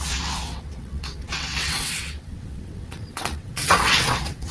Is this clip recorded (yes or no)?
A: no